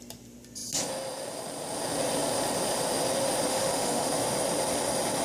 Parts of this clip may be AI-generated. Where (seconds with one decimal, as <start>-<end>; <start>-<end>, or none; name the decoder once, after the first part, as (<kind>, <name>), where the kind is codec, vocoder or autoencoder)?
3.5-4.1 (autoencoder, DAC-VAE)